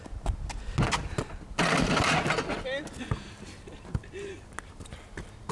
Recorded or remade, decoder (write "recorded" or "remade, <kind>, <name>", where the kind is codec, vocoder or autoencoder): recorded